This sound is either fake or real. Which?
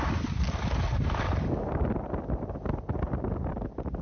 real